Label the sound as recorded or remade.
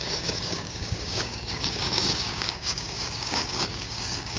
remade